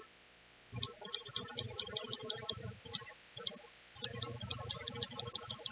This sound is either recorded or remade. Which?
recorded